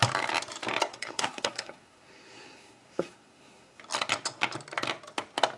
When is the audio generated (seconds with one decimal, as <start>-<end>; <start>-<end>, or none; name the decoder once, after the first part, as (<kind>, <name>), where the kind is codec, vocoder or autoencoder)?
0.9-3.8 (codec, SNAC)